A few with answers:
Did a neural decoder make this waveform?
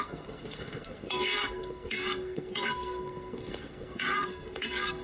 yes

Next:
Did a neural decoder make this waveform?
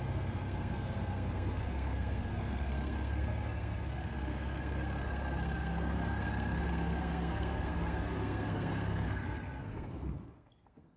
yes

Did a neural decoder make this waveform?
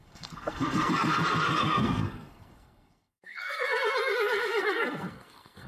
yes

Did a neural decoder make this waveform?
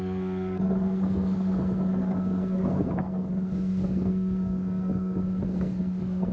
yes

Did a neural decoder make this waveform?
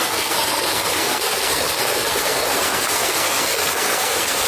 yes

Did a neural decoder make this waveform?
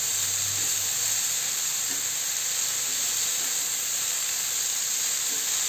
no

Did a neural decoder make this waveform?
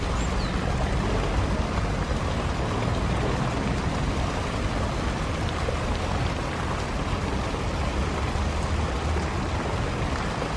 no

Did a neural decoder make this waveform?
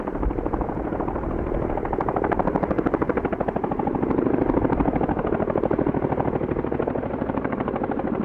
no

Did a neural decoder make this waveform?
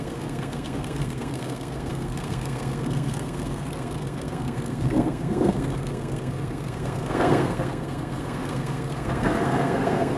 yes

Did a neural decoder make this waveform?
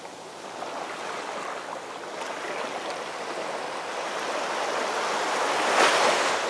no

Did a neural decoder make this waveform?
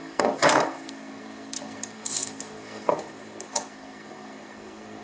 yes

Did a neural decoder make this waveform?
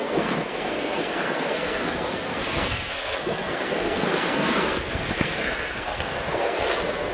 yes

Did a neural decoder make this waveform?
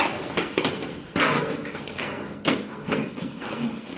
yes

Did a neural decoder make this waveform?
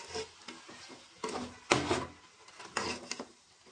no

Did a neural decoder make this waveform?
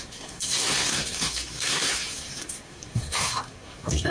yes